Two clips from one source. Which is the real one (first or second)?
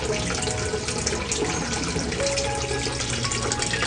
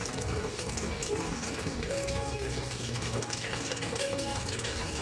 first